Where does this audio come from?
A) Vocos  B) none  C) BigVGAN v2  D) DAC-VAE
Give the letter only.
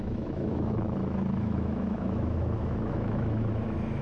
D